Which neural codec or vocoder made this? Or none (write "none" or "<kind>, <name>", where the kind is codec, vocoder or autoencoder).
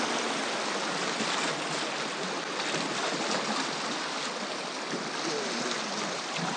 none